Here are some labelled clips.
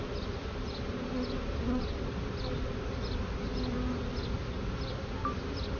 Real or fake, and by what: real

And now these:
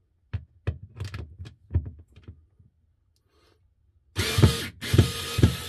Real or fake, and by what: real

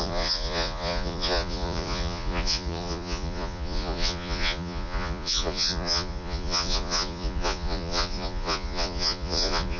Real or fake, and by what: fake, vocoder, Vocos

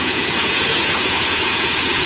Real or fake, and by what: fake, vocoder, Vocos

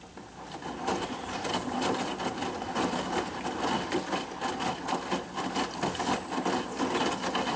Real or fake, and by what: real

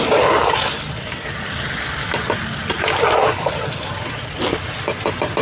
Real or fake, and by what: real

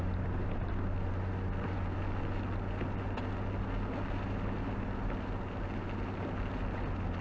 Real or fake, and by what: real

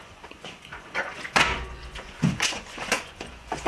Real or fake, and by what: fake, vocoder, Vocos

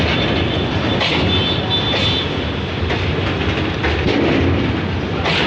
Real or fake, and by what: real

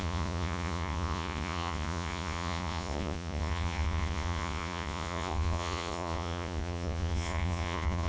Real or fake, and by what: fake, vocoder, Vocos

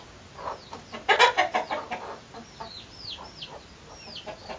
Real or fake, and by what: real